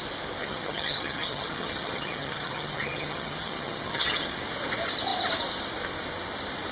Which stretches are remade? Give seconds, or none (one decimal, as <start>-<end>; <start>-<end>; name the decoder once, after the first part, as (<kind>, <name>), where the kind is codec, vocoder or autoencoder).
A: 0.4-4.4 (vocoder, HiFi-GAN)